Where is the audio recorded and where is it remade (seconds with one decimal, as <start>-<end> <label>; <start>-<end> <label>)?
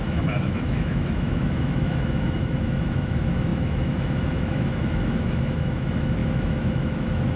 0.0-7.4 remade